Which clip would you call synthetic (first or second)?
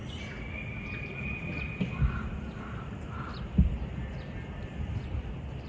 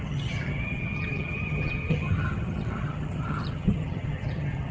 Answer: second